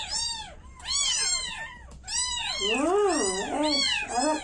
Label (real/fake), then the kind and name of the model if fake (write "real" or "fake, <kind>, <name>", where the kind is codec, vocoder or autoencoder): real